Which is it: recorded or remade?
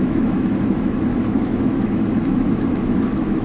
remade